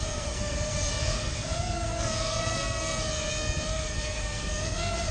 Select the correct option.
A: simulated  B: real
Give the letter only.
A